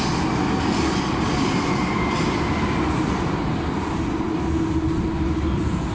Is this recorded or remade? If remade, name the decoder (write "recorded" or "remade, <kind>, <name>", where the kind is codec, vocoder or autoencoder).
recorded